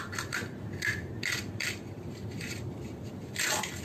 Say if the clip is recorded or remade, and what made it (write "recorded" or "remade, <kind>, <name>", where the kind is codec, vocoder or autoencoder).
recorded